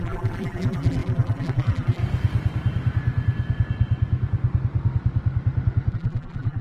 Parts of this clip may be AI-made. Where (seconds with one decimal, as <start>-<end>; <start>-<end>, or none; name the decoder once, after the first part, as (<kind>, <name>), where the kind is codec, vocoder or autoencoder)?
0.0-2.0 (vocoder, BigVGAN v2); 5.9-6.6